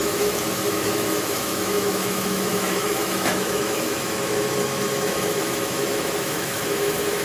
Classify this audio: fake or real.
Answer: fake